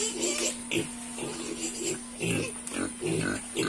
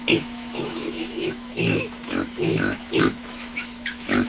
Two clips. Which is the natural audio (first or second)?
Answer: first